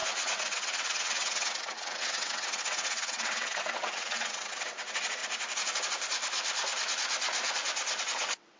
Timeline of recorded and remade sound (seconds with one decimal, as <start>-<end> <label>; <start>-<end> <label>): 0.0-5.2 remade; 5.2-8.0 recorded; 8.0-8.6 remade